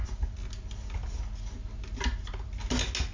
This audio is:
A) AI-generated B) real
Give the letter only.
B